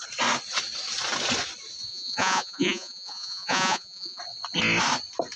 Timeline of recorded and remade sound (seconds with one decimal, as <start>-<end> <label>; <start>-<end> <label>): 0.0-1.9 recorded; 1.9-4.2 remade; 4.2-5.4 recorded